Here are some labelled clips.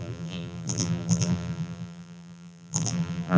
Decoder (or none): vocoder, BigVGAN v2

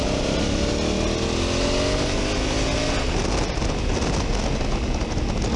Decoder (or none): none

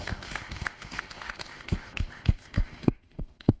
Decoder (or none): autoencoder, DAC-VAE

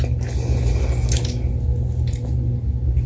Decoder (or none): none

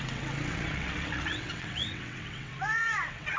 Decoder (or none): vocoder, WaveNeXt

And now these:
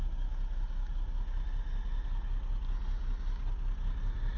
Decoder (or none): none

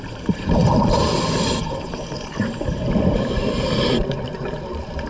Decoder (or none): vocoder, BigVGAN v2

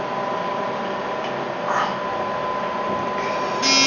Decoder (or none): none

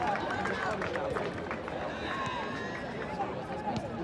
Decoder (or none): none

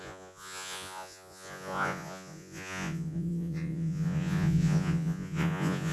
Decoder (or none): vocoder, Vocos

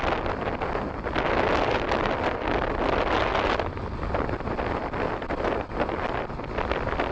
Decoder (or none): none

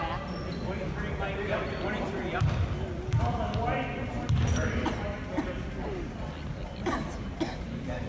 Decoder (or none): none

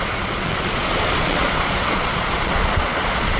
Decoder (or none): vocoder, Vocos